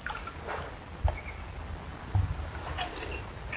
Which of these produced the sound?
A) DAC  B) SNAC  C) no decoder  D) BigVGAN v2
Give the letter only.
C